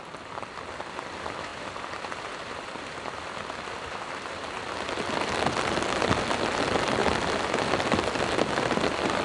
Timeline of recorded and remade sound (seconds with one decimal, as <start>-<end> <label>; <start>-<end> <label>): 0.0-9.2 recorded